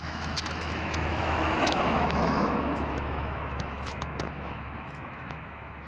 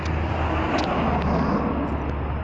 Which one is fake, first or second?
first